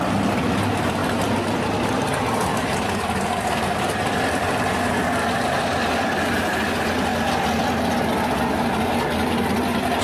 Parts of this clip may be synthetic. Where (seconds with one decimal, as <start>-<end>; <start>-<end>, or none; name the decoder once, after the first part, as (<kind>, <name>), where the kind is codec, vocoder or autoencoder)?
2.5-3.4 (vocoder, BigVGAN v2)